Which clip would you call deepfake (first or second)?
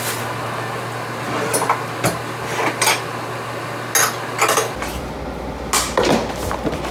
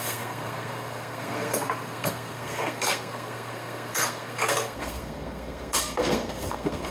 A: second